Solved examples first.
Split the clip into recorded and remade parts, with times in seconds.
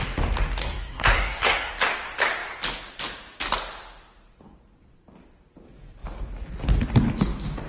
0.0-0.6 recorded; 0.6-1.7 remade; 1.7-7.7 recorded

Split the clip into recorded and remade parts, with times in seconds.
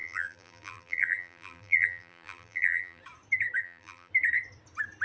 0.0-3.0 remade; 3.0-3.6 recorded; 3.6-4.1 remade; 4.1-5.0 recorded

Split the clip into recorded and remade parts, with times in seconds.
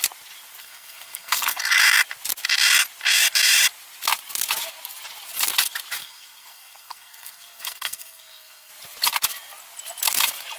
0.0-0.6 recorded; 0.6-1.8 remade; 1.8-6.0 recorded; 6.0-8.7 remade; 8.7-10.6 recorded